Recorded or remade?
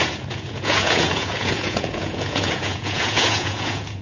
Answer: remade